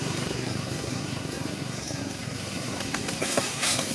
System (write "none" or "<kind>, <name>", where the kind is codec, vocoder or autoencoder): codec, SNAC